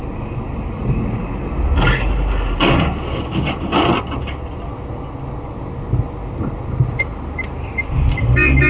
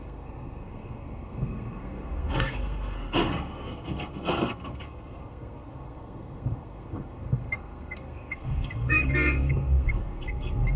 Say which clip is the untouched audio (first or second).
first